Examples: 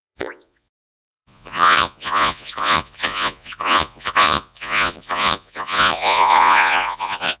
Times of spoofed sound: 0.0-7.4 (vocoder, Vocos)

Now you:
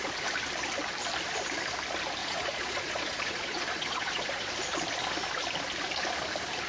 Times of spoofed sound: 2.2-4.5 (vocoder, Vocos)

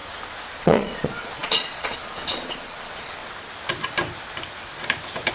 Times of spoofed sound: 0.6-3.2 (vocoder, Vocos)

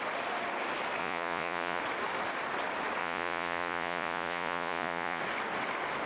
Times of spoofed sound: 1.0-1.8 (vocoder, Vocos); 3.0-5.2

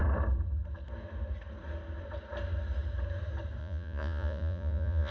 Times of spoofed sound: 3.6-5.1 (vocoder, Vocos)